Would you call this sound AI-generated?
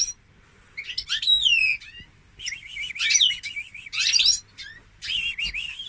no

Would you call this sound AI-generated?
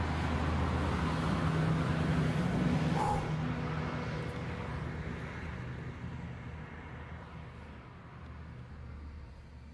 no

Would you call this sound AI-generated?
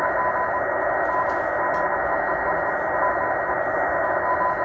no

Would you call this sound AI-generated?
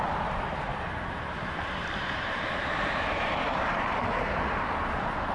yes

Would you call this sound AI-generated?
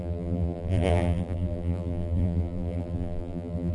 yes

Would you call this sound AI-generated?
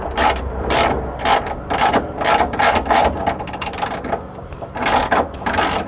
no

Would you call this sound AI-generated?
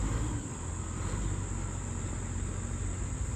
no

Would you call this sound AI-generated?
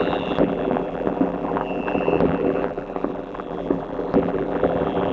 yes